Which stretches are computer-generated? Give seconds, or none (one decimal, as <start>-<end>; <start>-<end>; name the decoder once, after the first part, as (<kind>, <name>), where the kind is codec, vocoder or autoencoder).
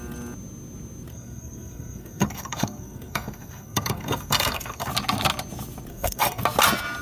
1.1-4.9 (codec, SNAC); 5.9-6.4